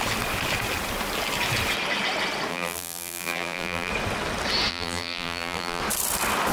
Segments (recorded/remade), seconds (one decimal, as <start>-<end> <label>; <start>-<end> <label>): 0.0-2.5 recorded; 2.5-3.9 remade; 3.9-4.7 recorded; 4.7-5.8 remade; 5.8-6.5 recorded